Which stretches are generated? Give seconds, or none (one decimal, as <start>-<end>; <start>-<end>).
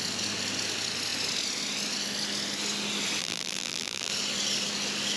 3.2-4.1